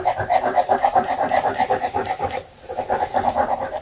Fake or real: fake